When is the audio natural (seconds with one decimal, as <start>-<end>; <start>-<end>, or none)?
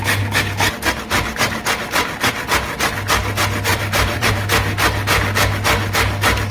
0.0-3.7; 4.3-6.5